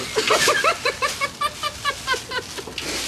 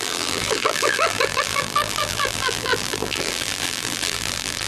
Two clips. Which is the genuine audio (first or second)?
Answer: first